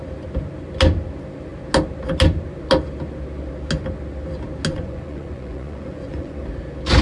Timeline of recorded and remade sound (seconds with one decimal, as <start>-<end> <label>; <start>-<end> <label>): 0.0-4.7 recorded; 4.7-6.4 remade; 6.4-7.0 recorded